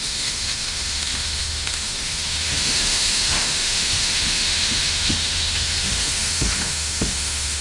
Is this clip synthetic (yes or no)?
yes